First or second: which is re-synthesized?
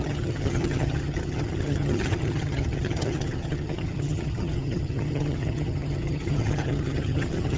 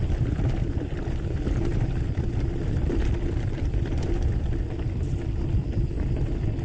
first